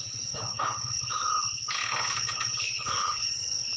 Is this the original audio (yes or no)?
no